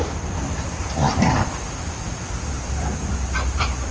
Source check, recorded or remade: remade